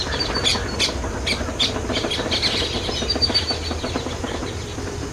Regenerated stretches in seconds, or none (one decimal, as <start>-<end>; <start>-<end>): none